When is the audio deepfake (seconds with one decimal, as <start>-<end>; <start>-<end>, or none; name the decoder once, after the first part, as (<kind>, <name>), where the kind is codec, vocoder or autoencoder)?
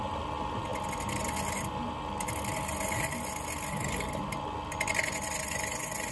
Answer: none